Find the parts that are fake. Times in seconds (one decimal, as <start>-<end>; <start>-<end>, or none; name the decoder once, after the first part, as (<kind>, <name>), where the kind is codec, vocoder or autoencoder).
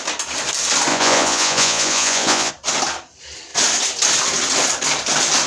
0.9-2.5 (vocoder, Vocos)